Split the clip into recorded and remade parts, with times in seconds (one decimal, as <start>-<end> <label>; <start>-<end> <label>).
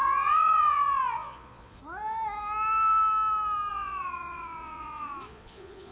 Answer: 0.0-1.8 remade; 1.8-3.7 recorded; 3.7-5.9 remade